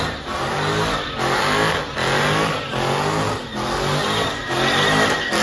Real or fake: real